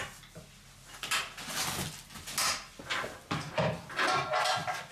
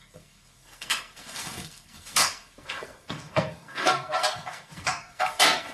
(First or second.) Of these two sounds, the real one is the first